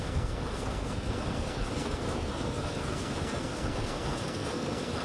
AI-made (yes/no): yes